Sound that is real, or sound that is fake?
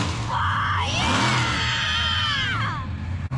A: real